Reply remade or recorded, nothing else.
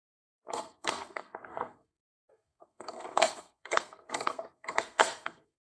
remade